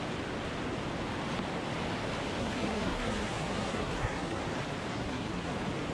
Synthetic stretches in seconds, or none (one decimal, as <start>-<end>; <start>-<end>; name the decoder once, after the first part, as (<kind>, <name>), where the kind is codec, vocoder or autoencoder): 2.4-4.4 (codec, SNAC); 4.9-5.5